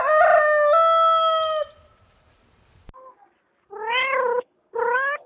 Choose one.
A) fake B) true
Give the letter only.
B